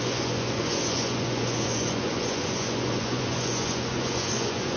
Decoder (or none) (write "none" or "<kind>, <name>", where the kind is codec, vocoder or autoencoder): vocoder, Vocos